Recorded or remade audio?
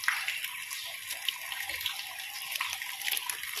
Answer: recorded